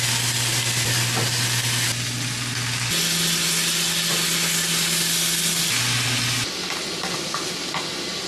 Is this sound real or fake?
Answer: real